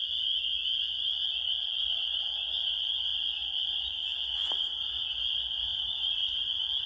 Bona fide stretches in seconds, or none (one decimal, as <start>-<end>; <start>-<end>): 4.4-4.9; 5.7-6.4